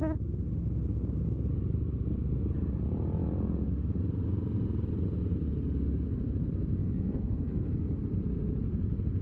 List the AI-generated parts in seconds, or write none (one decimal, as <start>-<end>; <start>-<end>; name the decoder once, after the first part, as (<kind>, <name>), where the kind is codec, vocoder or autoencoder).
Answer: 6.8-8.0 (codec, SNAC)